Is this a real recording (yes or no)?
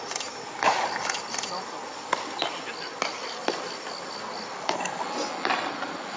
yes